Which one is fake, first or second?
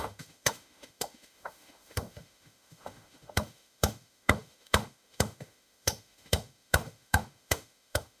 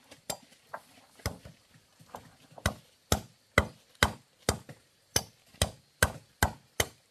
first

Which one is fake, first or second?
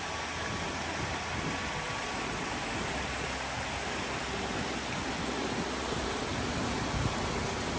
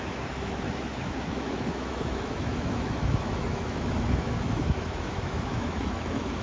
second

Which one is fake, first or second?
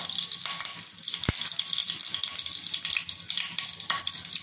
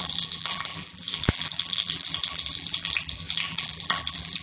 second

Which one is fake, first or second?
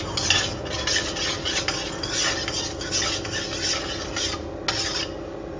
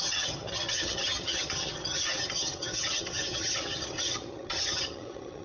second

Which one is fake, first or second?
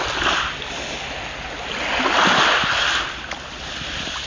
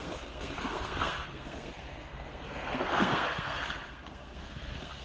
second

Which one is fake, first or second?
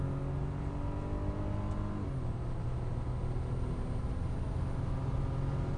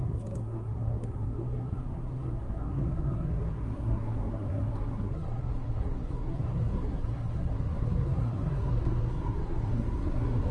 second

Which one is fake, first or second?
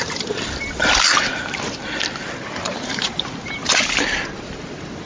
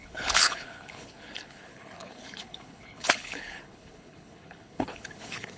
second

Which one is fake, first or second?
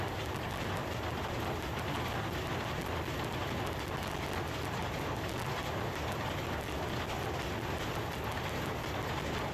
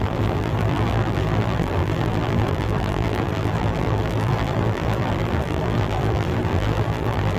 second